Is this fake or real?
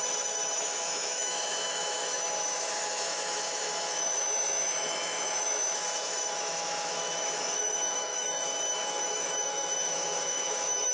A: fake